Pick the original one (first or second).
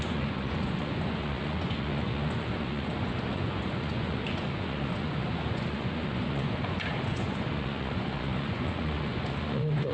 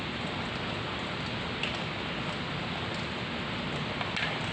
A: second